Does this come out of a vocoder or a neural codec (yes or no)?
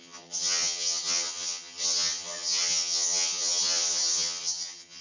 yes